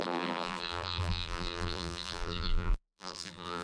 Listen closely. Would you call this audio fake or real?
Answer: fake